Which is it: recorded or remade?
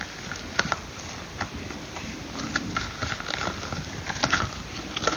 recorded